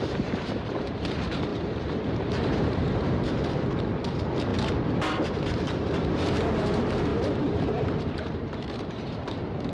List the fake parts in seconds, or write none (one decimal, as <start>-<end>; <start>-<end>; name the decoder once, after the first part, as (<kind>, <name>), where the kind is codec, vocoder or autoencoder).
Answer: 0.0-4.5 (vocoder, BigVGAN v2); 5.3-9.7